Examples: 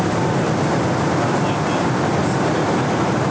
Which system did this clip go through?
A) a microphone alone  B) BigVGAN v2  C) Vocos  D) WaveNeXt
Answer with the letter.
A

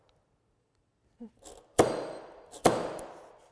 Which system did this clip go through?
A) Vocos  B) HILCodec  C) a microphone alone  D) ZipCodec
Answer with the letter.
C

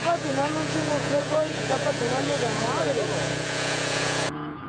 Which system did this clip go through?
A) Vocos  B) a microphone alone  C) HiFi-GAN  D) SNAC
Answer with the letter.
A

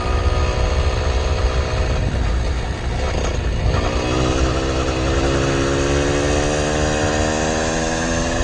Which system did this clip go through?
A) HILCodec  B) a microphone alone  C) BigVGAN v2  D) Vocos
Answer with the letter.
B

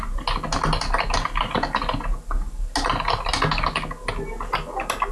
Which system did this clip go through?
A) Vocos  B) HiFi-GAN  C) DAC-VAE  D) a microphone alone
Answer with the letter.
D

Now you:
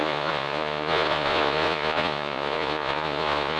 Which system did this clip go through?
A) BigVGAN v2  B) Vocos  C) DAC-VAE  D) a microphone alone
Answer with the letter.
B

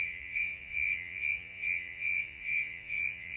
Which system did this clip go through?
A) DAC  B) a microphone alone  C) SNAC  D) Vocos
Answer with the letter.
D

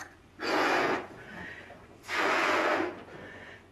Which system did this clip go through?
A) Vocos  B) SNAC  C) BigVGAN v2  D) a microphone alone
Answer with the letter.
A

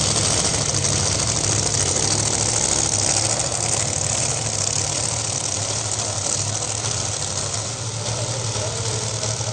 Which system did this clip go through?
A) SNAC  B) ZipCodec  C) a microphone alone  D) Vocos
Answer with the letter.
C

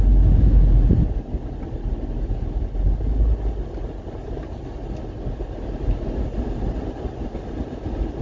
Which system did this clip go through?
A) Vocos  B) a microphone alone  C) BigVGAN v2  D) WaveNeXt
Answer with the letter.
B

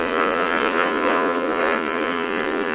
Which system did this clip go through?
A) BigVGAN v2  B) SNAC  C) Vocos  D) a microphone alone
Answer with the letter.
C